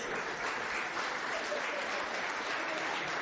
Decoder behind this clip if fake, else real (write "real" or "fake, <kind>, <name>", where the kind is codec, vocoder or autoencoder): real